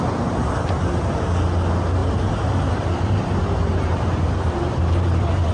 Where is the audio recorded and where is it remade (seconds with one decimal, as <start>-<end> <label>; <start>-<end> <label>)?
0.0-2.0 recorded; 2.0-5.5 remade

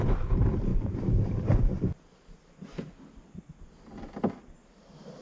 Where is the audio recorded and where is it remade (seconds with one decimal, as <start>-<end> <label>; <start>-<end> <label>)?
0.0-5.2 recorded

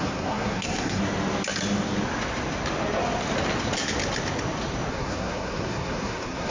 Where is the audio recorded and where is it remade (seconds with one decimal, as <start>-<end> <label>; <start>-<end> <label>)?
0.0-1.0 remade; 1.0-4.9 recorded; 4.9-6.5 remade